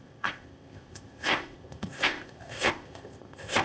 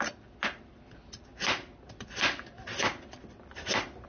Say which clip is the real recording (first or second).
second